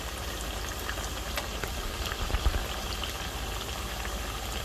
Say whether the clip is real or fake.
real